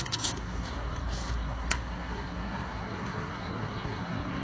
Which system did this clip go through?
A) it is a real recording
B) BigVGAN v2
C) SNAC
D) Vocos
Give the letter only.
C